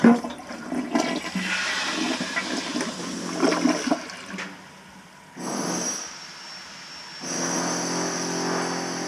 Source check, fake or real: real